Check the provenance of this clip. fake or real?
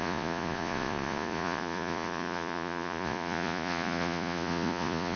fake